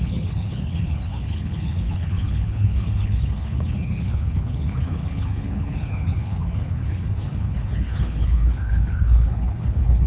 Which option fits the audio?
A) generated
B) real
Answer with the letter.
A